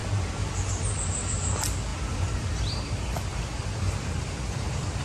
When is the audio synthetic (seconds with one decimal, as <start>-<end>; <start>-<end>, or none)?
0.0-5.0